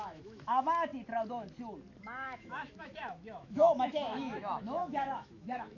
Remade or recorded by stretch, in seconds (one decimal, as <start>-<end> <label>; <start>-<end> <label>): 0.0-0.9 remade; 0.9-2.0 recorded; 2.0-5.8 remade